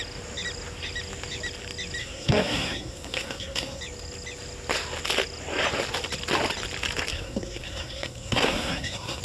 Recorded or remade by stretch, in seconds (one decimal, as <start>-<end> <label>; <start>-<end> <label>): 0.0-2.0 recorded; 2.0-3.8 remade; 3.8-7.1 recorded; 7.1-9.2 remade